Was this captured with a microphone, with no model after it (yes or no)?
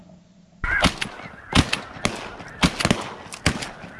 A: yes